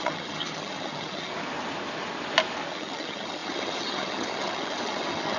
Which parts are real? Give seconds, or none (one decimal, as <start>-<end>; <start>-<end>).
1.3-2.7